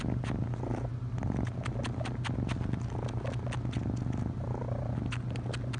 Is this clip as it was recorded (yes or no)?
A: yes